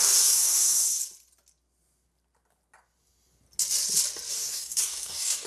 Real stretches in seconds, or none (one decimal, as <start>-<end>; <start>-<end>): 1.0-4.3